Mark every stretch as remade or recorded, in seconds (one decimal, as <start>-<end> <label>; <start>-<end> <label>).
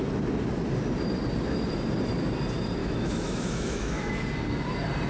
0.0-2.8 recorded; 2.8-4.1 remade; 4.1-5.1 recorded